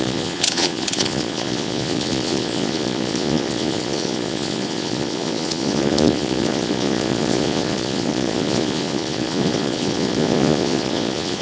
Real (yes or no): no